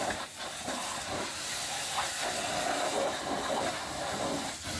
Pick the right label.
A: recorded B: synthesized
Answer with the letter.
A